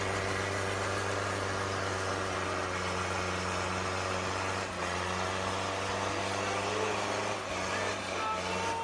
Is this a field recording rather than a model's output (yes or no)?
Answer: yes